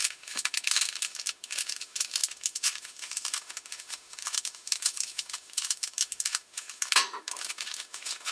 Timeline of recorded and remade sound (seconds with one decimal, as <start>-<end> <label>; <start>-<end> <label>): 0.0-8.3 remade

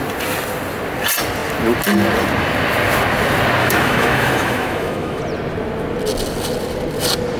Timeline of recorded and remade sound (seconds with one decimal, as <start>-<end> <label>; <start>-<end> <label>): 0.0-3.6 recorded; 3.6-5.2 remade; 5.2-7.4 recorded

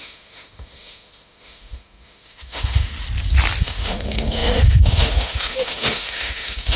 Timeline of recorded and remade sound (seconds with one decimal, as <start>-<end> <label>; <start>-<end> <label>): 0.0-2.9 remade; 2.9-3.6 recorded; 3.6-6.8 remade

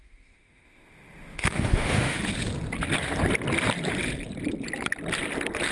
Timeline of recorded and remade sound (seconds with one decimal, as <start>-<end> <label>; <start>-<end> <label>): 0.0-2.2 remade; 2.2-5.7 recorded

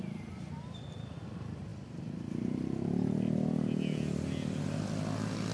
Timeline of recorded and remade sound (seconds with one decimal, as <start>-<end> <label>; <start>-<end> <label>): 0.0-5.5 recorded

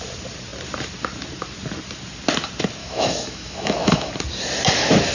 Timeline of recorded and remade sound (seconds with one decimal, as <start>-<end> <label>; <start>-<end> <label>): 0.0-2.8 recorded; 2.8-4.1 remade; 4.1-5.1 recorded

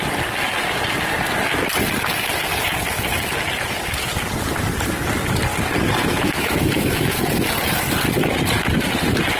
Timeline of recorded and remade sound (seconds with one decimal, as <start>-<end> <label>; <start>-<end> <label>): 0.0-6.0 recorded; 6.0-7.2 remade; 7.2-9.4 recorded